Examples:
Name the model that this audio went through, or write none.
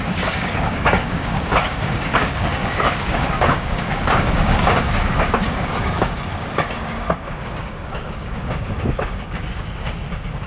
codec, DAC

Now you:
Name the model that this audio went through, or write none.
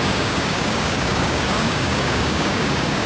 codec, DAC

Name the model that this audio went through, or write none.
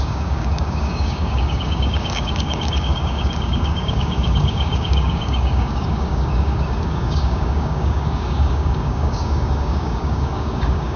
codec, DAC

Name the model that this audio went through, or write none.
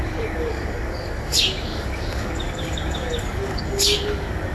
codec, DAC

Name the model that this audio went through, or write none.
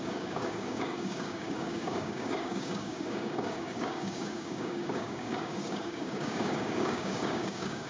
codec, DAC